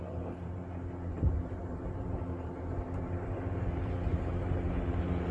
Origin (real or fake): fake